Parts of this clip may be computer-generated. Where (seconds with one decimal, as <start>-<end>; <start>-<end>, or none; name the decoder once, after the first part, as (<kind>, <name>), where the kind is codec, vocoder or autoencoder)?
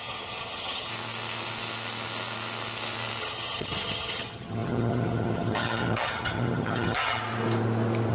0.0-0.9 (vocoder, HiFi-GAN); 3.2-7.2